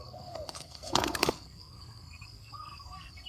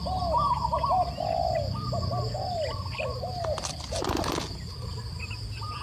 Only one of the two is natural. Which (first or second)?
second